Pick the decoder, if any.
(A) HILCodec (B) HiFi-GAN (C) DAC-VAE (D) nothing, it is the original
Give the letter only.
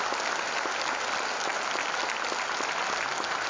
D